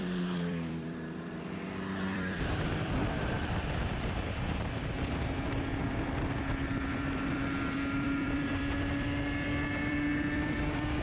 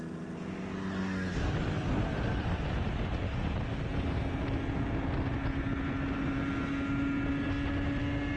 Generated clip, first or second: first